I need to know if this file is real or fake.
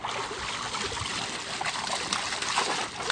real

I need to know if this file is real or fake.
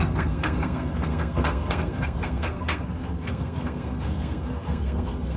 fake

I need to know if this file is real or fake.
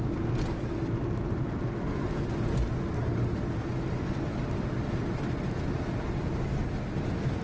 real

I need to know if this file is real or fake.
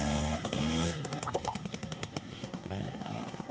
fake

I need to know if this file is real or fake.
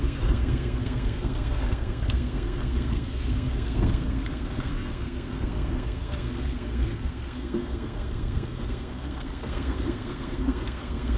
fake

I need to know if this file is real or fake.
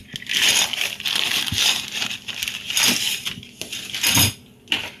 real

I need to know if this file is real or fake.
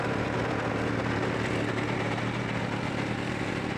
real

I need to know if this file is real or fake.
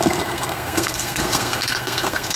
fake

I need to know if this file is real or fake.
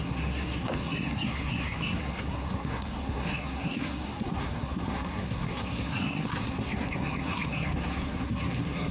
fake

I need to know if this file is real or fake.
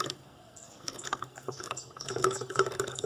fake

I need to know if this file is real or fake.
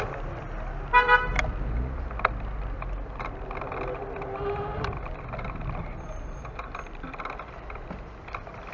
real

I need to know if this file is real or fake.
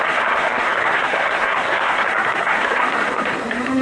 fake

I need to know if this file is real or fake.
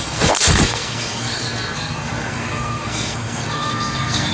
fake